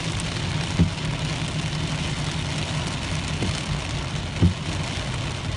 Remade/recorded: recorded